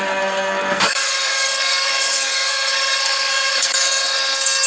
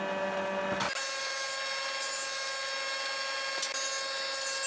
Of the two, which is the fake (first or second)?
first